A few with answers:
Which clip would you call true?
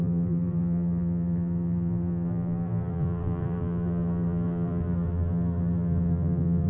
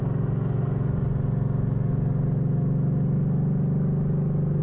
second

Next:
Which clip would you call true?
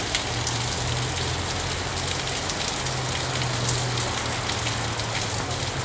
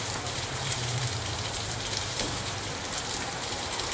first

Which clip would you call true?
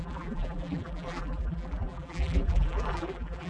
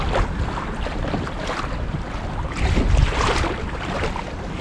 second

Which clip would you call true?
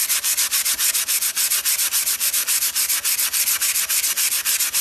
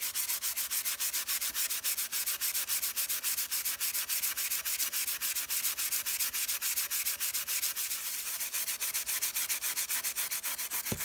second